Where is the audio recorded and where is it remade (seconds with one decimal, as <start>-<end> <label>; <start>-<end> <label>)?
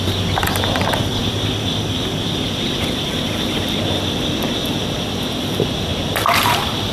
0.0-6.9 recorded